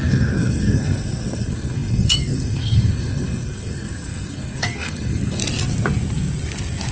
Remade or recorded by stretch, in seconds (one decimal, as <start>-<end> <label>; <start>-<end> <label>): 0.0-5.4 remade; 5.4-6.9 recorded